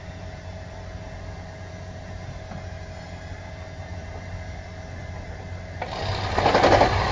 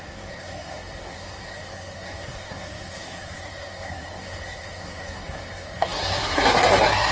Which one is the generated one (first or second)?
second